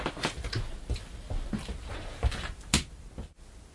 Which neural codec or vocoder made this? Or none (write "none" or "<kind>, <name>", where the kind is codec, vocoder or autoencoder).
none